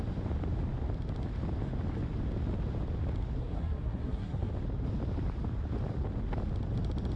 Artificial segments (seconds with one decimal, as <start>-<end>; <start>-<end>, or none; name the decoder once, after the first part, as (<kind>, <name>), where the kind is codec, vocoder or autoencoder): 3.4-4.5 (codec, SNAC)